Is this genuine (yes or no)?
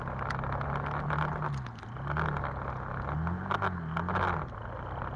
yes